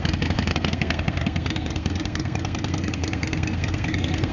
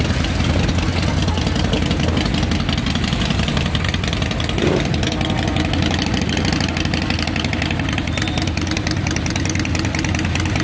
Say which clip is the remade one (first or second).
first